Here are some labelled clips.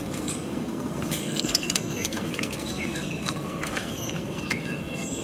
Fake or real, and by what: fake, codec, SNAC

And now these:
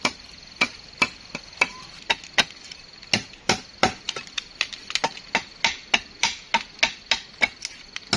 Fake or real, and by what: real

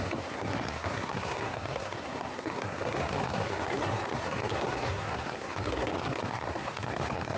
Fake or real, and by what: fake, codec, SNAC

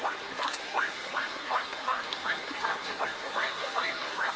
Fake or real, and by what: fake, codec, SNAC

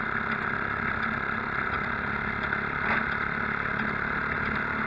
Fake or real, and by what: real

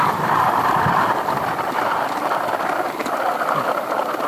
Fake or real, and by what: real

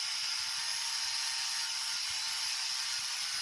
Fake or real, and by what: real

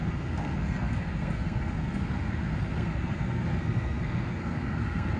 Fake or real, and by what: fake, codec, SNAC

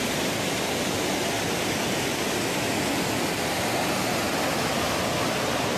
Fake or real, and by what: real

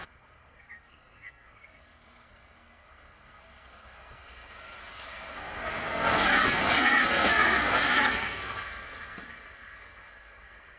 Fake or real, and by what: fake, codec, SNAC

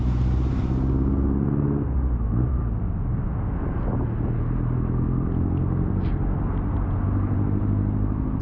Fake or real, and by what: real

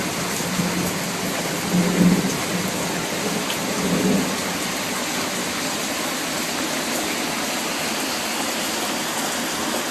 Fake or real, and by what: real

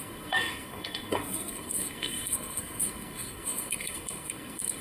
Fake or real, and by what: fake, codec, SNAC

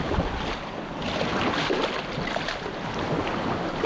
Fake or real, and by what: real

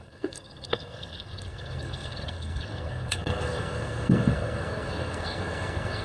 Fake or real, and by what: fake, codec, SNAC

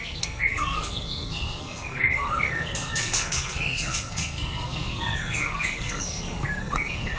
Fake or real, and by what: fake, codec, SNAC